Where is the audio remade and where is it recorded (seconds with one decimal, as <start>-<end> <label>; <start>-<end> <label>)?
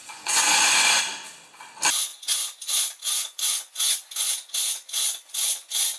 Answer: 0.0-1.0 remade; 1.0-2.1 recorded; 2.1-6.0 remade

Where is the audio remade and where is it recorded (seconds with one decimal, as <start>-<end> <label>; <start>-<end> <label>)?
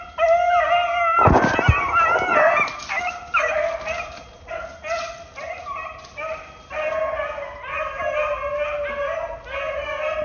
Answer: 0.0-10.2 recorded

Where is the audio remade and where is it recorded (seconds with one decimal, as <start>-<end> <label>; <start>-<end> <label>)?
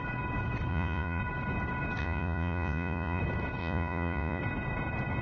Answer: 0.0-0.7 recorded; 0.7-1.2 remade; 1.2-2.0 recorded; 2.0-3.2 remade; 3.2-3.6 recorded; 3.6-4.4 remade; 4.4-5.2 recorded